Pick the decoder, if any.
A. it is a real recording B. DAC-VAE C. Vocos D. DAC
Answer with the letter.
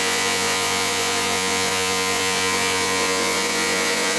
C